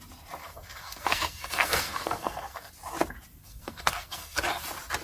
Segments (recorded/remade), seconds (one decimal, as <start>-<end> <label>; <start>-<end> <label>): 0.0-0.4 recorded; 0.4-2.7 remade; 2.7-3.4 recorded; 3.4-4.4 remade; 4.4-5.0 recorded